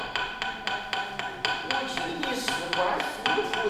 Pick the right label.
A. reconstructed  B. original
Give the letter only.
B